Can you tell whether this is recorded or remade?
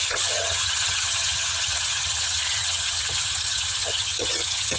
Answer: remade